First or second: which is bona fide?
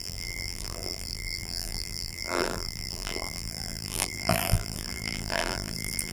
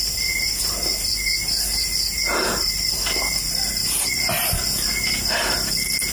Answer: second